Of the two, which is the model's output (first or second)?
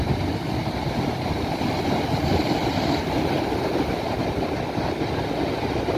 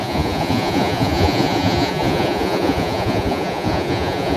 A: second